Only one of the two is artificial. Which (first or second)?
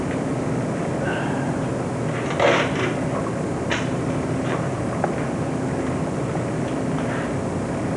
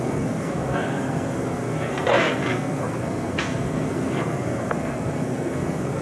second